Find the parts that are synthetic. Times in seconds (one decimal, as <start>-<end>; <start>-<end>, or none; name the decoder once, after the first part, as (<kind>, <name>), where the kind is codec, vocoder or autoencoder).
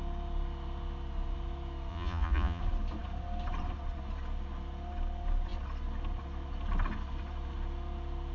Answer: 1.9-2.6 (vocoder, Vocos)